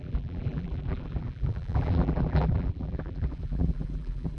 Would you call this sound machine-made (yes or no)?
yes